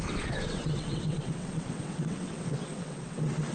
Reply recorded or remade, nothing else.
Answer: remade